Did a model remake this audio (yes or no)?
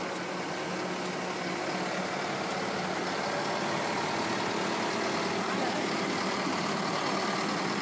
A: no